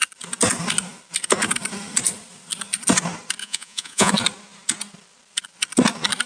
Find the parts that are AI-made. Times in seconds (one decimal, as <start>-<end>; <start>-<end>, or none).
3.4-4.1